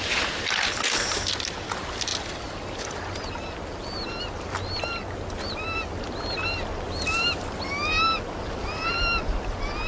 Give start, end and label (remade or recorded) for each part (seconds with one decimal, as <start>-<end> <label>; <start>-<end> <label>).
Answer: 0.0-9.9 recorded